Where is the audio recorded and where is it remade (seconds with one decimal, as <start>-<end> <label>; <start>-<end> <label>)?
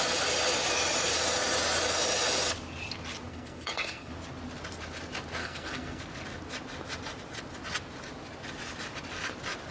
0.0-3.3 recorded; 3.3-4.1 remade; 4.1-5.4 recorded; 5.4-6.0 remade; 6.0-9.7 recorded